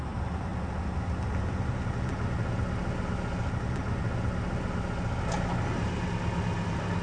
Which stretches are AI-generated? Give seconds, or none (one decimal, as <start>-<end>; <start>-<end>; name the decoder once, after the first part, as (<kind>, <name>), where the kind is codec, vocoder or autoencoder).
none